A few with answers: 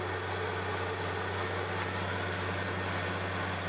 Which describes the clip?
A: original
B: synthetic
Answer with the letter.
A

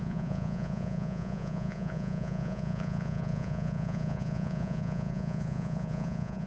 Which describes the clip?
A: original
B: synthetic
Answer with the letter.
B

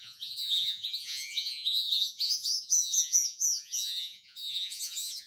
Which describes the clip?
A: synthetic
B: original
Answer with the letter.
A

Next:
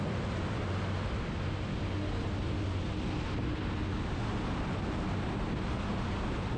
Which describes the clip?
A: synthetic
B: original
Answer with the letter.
B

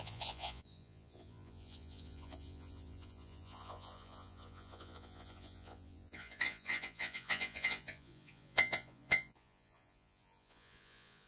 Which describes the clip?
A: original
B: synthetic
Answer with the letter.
B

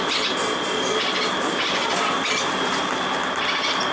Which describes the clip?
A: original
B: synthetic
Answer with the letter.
A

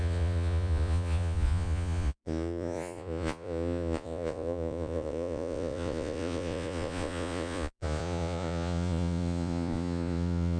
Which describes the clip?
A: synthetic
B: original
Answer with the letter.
A